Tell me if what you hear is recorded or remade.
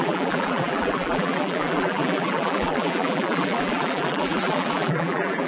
remade